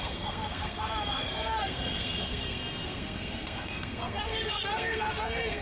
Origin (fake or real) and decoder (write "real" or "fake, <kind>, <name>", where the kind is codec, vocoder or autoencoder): fake, codec, SNAC